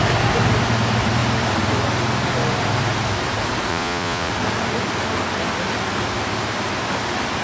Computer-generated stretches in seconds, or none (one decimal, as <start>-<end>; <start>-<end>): 3.7-4.3